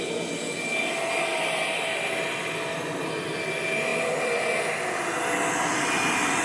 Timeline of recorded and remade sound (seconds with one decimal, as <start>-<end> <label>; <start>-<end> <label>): 0.0-6.4 recorded